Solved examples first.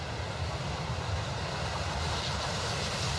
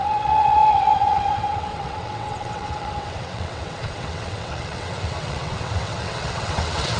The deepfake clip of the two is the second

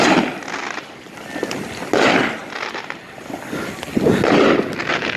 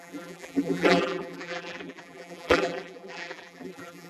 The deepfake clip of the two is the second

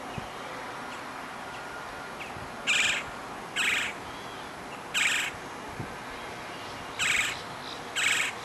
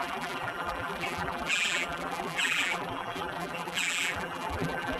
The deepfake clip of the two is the second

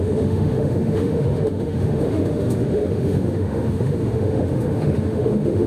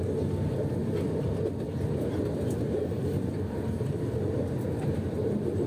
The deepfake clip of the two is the first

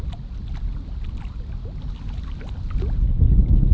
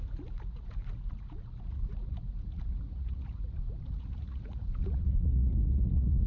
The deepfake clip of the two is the second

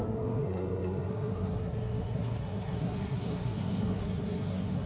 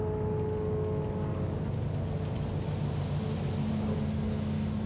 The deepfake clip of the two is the first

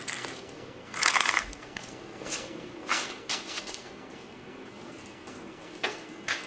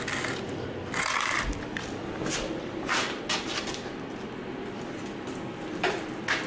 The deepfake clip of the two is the first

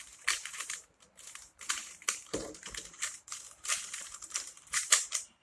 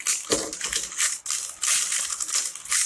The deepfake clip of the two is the first